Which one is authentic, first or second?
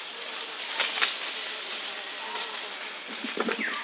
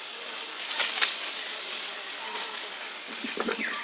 first